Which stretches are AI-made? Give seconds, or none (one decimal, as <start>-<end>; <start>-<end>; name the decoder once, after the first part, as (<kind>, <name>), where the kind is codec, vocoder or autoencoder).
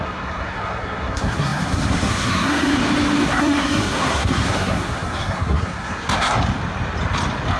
0.0-2.8 (codec, SNAC); 3.4-6.4